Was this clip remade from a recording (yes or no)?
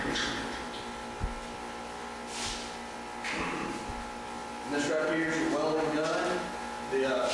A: no